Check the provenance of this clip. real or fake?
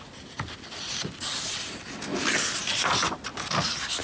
real